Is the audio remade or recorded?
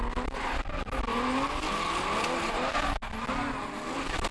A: recorded